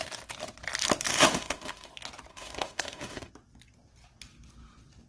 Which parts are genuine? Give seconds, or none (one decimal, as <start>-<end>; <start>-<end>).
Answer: 0.0-1.1; 1.9-2.3; 3.3-5.1